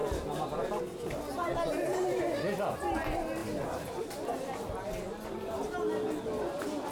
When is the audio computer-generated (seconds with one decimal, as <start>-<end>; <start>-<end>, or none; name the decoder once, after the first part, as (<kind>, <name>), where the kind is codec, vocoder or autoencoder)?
none